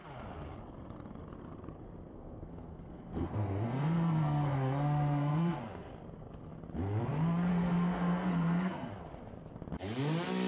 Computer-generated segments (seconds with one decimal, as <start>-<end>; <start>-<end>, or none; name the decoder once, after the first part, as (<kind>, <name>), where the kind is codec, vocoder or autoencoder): 2.1-5.6 (codec, SNAC); 7.5-8.9